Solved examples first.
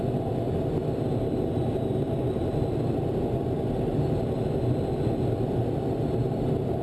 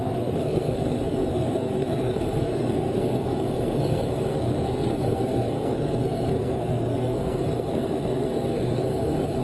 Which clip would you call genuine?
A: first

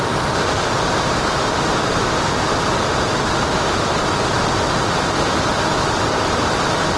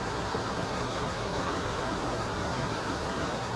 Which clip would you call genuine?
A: first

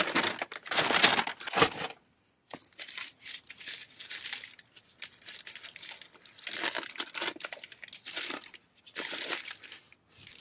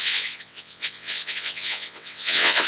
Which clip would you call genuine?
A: first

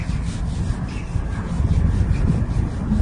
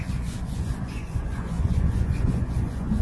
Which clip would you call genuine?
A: first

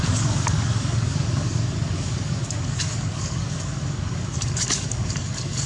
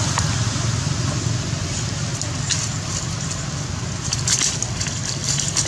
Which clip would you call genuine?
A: second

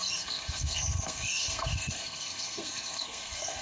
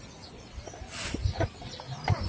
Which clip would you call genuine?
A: second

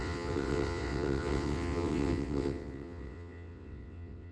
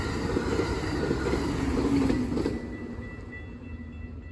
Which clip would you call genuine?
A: second